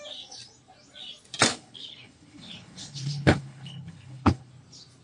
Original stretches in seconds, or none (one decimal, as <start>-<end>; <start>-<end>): 0.0-1.5; 4.5-5.0